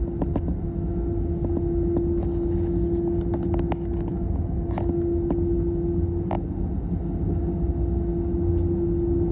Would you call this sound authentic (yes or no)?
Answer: yes